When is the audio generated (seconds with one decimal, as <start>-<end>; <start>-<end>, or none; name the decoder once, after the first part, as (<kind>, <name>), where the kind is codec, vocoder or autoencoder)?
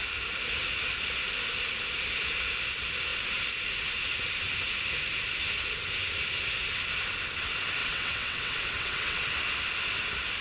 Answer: 7.8-9.3 (vocoder, WaveNeXt)